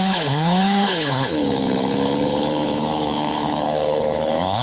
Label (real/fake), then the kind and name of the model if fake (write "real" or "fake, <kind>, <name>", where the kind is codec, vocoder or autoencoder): fake, codec, HILCodec